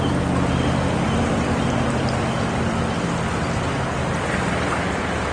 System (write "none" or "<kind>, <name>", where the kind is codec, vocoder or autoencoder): none